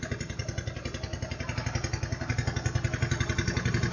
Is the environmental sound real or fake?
real